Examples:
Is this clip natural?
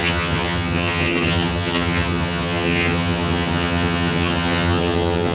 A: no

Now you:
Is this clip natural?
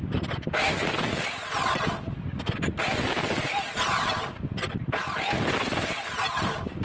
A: yes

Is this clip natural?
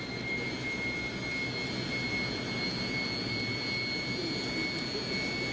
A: yes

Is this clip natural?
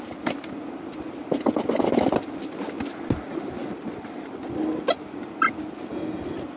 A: yes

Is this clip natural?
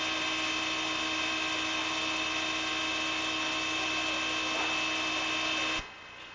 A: yes